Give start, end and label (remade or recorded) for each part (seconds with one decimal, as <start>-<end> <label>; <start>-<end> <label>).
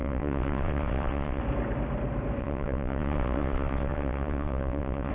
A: 0.0-1.4 remade; 1.4-2.4 recorded; 2.4-5.1 remade